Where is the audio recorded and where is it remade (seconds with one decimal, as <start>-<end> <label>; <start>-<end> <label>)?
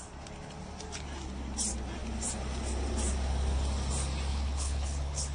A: 0.0-4.3 recorded; 4.3-5.3 remade